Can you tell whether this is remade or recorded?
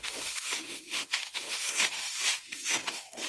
remade